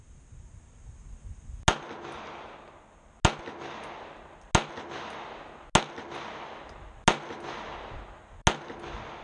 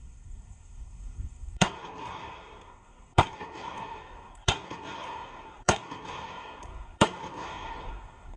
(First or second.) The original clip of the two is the first